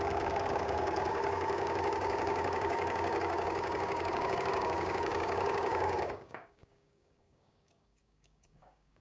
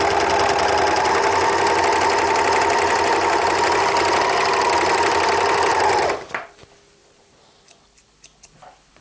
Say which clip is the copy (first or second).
first